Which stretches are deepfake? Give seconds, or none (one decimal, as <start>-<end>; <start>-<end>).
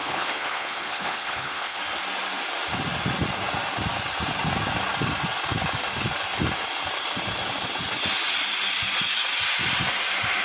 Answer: 0.0-1.8